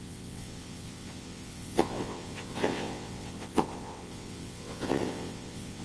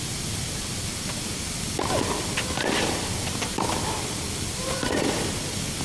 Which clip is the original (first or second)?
second